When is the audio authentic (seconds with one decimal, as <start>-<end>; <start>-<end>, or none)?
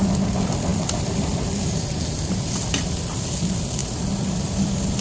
0.0-5.0